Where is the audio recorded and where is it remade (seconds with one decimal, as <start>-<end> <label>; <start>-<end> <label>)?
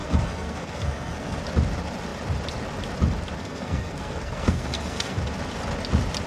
0.0-1.4 remade; 1.4-3.4 recorded; 3.4-5.2 remade; 5.2-6.3 recorded